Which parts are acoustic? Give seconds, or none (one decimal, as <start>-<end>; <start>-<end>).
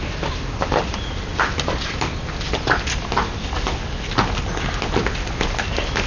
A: 0.0-6.1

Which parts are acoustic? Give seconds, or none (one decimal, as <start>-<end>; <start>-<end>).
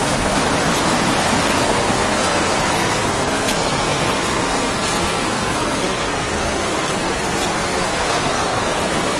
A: 0.4-1.5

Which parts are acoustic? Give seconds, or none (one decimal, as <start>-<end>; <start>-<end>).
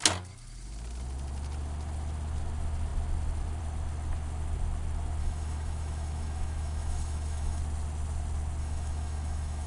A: 0.0-5.2; 7.6-8.6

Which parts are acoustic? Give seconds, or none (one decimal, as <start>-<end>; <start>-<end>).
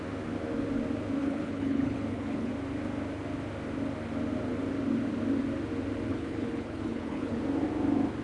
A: 0.0-1.2; 2.5-6.1; 7.4-8.2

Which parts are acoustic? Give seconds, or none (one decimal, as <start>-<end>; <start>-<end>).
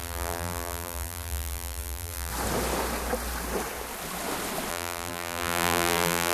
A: 2.3-4.7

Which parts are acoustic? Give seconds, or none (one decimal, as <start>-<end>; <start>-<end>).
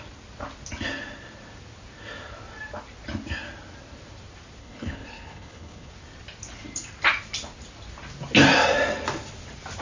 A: 0.0-4.6; 5.9-9.8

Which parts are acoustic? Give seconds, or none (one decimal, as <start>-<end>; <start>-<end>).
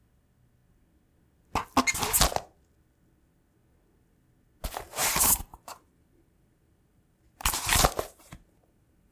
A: 0.0-5.0